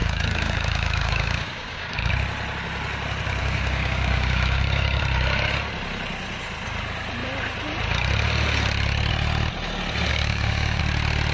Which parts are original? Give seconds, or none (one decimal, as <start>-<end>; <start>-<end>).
2.1-3.4; 5.0-10.1; 10.8-11.3